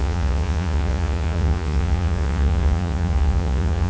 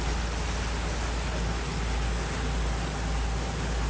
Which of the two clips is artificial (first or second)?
first